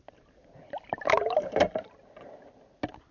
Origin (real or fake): real